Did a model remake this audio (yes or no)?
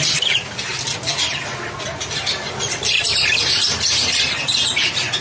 no